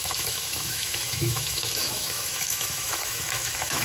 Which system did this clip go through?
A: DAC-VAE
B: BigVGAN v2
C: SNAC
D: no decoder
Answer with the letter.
A